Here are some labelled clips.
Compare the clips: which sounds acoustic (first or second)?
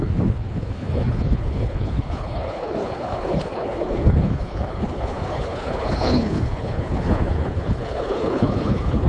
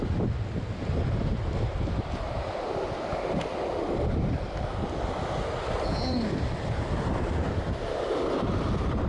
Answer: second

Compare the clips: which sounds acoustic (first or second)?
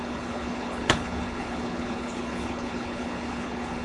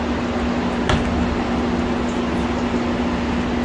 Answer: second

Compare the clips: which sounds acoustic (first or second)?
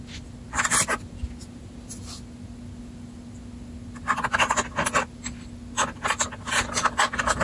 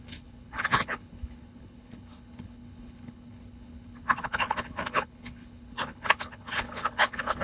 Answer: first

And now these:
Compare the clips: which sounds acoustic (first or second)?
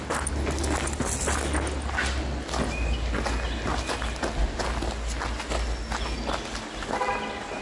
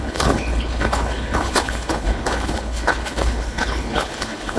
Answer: first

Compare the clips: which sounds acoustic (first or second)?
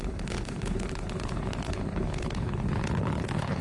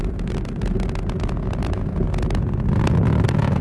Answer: second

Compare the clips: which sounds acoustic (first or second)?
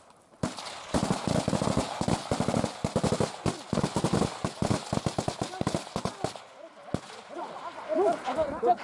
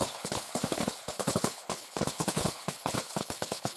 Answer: first